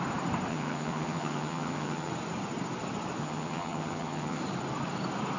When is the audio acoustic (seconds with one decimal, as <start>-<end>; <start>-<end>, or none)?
0.0-0.5; 2.1-3.2; 4.4-5.4